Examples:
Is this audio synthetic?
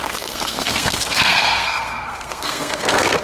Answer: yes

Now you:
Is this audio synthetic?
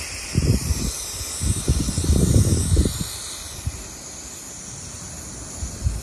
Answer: no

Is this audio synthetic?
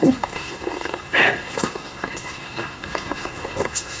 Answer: yes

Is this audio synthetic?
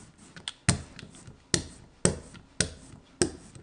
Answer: no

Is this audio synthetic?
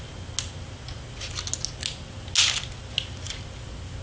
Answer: no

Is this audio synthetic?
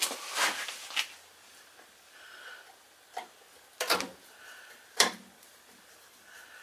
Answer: no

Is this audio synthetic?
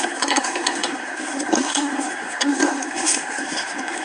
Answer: yes